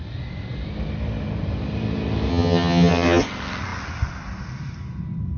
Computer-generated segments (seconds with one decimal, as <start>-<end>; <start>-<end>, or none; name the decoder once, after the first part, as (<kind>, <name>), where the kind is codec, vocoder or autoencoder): 2.3-3.2 (vocoder, HiFi-GAN)